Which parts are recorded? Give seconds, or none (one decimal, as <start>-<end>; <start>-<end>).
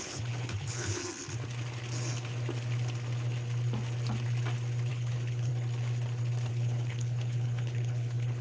1.0-4.9; 5.5-6.5